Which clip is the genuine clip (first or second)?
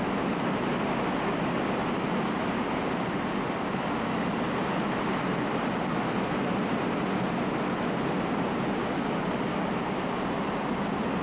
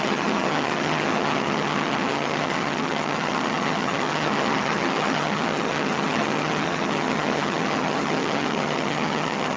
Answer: first